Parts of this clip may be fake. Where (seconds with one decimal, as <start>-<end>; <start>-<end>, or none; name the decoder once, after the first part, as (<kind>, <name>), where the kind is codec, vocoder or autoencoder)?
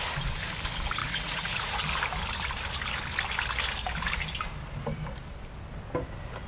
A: 1.0-1.8 (vocoder, Vocos)